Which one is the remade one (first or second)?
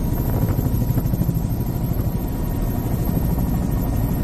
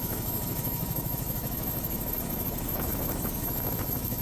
second